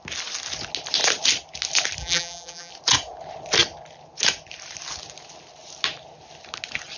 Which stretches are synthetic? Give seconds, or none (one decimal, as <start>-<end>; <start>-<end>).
2.0-2.7